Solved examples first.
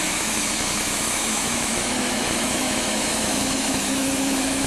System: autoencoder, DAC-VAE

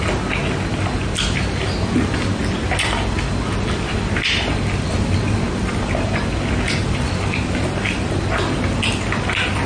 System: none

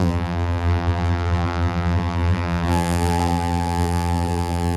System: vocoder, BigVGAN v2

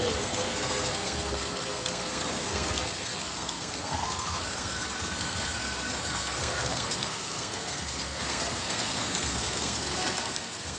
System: codec, SNAC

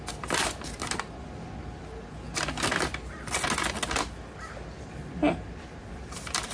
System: none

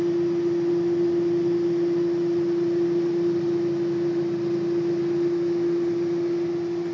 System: none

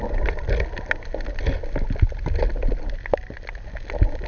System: none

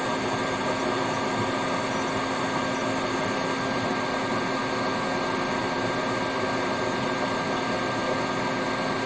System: none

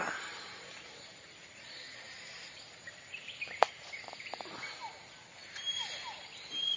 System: none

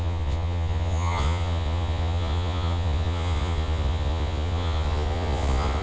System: vocoder, Vocos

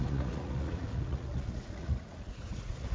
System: vocoder, Vocos